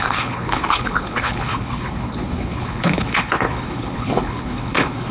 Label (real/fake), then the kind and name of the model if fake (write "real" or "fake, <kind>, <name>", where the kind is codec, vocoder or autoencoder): fake, codec, HILCodec